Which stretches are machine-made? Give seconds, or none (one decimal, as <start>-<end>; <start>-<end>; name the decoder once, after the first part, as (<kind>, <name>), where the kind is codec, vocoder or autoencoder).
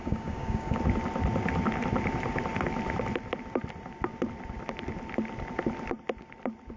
0.0-0.8 (codec, DAC)